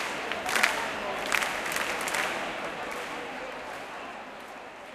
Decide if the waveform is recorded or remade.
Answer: recorded